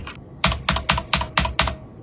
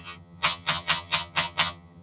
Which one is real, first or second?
first